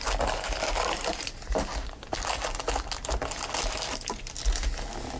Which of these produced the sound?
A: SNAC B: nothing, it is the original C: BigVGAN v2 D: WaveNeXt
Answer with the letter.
B